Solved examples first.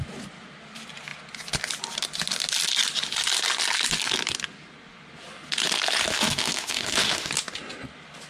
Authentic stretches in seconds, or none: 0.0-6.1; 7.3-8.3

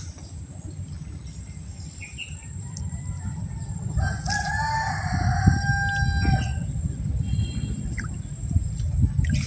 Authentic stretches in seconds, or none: 0.0-9.5

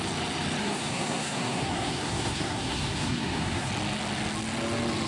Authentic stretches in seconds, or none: 0.0-0.6; 3.7-5.1